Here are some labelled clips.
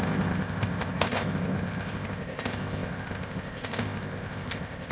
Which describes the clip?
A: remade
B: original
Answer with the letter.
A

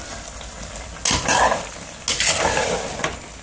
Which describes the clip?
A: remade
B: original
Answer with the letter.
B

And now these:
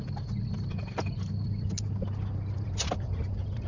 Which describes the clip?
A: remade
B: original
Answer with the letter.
B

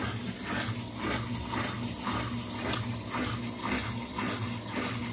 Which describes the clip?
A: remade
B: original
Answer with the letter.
B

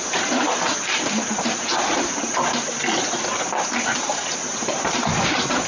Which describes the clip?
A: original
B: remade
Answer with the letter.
A